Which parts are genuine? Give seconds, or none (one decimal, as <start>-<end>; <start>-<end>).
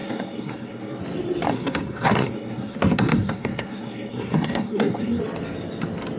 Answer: 1.0-1.5; 5.2-6.2